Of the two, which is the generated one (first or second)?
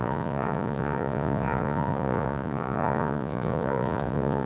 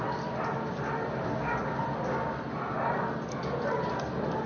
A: first